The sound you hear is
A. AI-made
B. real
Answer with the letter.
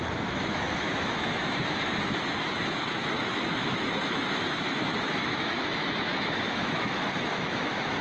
A